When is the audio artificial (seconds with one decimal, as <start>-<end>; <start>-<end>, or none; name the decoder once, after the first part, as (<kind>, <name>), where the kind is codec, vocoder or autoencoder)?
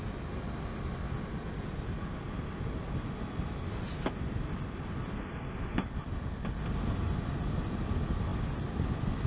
none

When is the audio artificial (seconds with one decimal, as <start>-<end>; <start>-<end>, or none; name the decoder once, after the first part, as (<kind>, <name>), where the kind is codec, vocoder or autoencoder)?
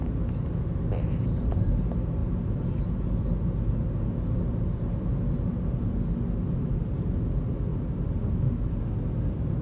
7.7-8.2 (vocoder, BigVGAN v2)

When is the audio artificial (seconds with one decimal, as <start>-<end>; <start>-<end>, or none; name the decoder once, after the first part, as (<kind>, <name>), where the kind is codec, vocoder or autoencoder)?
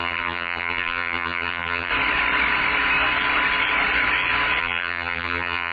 0.0-1.9 (vocoder, BigVGAN v2); 4.6-5.7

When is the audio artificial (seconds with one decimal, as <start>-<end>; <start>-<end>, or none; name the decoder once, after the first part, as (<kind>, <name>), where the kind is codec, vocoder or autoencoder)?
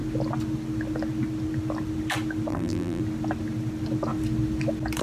2.5-3.0 (vocoder, BigVGAN v2)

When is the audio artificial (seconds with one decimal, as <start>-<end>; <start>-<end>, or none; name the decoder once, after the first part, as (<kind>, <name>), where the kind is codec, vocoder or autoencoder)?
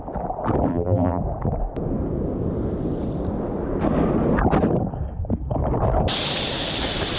0.7-1.2 (vocoder, BigVGAN v2)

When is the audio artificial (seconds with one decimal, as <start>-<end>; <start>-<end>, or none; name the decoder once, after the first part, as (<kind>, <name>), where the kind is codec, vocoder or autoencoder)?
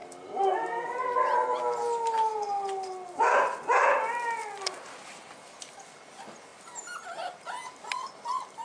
0.0-1.6 (vocoder, BigVGAN v2)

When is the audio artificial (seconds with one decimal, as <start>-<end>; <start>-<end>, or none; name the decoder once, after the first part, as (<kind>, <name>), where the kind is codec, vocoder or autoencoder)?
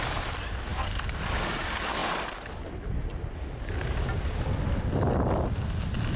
0.7-1.3 (vocoder, BigVGAN v2)